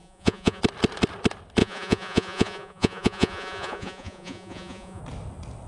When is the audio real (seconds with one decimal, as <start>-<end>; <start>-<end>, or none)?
0.6-1.6; 5.0-5.7